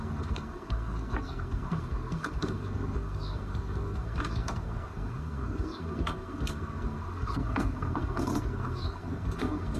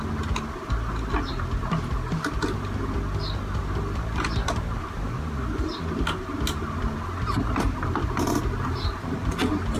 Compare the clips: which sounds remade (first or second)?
first